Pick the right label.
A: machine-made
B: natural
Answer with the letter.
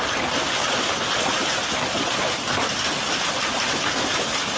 B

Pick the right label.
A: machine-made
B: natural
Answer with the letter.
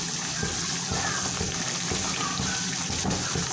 B